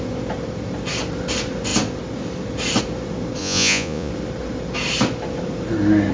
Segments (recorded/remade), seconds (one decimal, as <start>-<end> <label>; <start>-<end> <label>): 0.0-3.4 recorded; 3.4-4.1 remade; 4.1-6.1 recorded